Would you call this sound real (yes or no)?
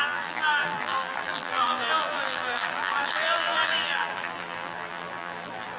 no